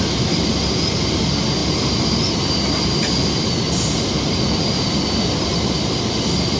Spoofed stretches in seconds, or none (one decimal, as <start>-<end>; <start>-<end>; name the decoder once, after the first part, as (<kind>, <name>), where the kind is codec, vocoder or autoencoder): none